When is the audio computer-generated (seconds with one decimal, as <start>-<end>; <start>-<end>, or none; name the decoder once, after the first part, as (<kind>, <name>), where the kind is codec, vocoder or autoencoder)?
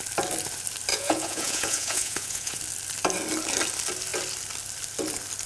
0.9-2.6 (vocoder, Vocos)